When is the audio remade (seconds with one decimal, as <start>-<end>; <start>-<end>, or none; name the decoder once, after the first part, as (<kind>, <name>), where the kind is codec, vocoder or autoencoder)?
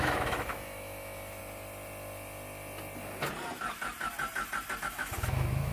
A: 0.0-1.4 (autoencoder, DAC-VAE); 4.8-5.7